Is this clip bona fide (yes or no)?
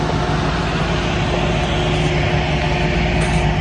yes